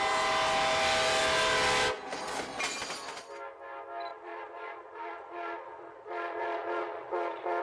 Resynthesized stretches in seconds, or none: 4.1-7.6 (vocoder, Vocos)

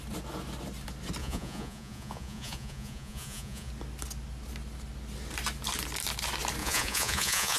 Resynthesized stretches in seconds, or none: 1.2-3.7 (vocoder, Vocos); 6.6-7.6

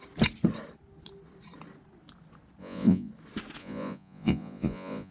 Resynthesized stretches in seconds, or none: 2.6-3.1 (vocoder, Vocos); 3.6-5.1

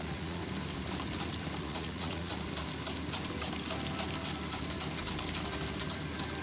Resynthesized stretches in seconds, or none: 0.0-0.4 (vocoder, Vocos); 1.6-2.3

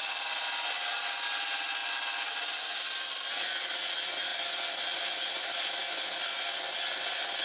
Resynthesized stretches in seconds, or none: none

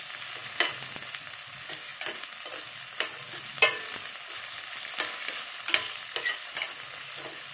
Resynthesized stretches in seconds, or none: none

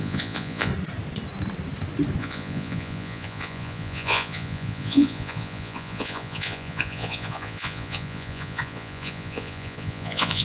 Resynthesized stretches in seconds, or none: 0.0-0.7 (vocoder, Vocos); 2.2-10.4